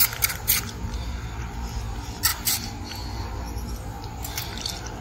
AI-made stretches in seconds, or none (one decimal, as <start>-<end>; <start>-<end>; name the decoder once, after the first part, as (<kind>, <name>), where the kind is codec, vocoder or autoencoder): none